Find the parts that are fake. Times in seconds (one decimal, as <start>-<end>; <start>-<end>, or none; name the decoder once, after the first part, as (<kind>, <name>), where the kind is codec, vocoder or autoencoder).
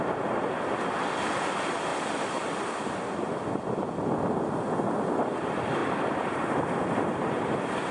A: none